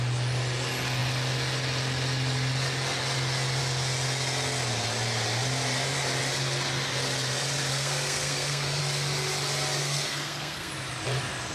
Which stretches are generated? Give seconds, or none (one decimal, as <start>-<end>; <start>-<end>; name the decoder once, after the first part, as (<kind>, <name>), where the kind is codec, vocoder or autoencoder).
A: 7.7-8.8 (codec, SNAC); 9.8-10.7